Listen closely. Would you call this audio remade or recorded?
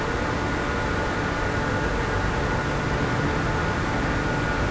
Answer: recorded